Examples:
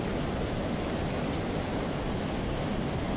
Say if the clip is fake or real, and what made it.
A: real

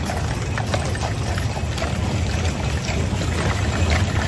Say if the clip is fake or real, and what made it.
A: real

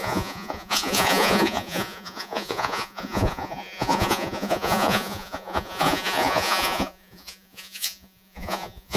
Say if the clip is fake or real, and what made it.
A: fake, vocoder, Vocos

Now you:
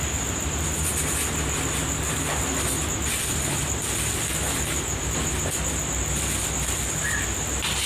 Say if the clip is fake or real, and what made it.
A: real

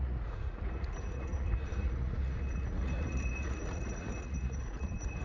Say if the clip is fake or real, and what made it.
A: fake, vocoder, Vocos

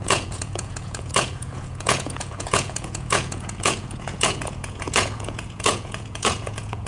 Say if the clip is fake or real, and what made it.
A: fake, vocoder, Vocos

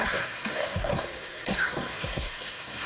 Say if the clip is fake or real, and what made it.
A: fake, codec, SNAC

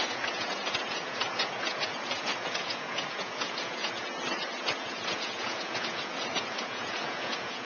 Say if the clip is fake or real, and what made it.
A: fake, vocoder, Vocos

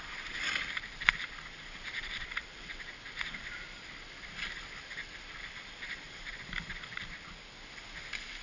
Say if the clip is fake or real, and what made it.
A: fake, vocoder, BigVGAN v2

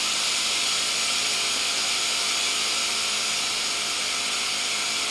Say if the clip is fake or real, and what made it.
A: real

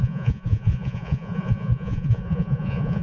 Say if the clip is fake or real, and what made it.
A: fake, vocoder, Vocos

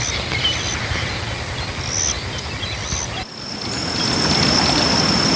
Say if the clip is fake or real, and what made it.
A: real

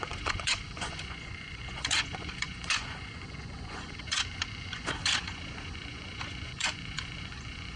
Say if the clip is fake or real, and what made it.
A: fake, vocoder, Vocos